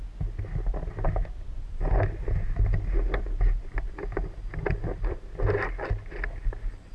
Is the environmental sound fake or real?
real